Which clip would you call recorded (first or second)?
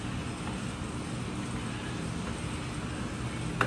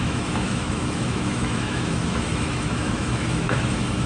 first